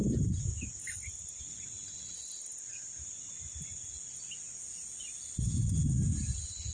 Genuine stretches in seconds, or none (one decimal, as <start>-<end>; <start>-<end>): 0.0-6.7